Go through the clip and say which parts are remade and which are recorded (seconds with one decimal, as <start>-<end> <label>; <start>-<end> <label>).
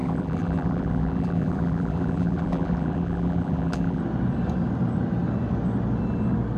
0.0-4.0 remade; 4.0-6.6 recorded